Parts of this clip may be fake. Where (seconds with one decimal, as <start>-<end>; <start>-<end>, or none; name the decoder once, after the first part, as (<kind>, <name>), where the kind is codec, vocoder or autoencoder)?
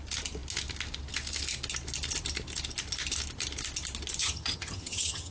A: 4.2-5.3 (vocoder, HiFi-GAN)